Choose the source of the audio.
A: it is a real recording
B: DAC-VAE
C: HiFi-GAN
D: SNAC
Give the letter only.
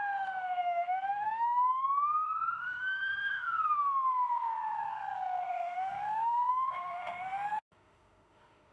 B